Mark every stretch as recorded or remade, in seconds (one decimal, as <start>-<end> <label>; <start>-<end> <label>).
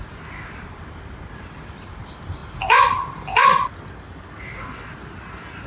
0.0-5.7 recorded